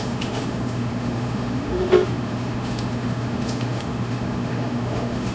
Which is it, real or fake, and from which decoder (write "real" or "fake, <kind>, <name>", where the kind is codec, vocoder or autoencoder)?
fake, autoencoder, DAC-VAE